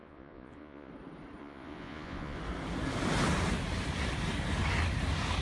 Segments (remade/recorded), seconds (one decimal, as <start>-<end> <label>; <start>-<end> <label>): 0.0-0.9 remade; 0.9-1.4 recorded; 1.4-2.4 remade; 2.4-5.4 recorded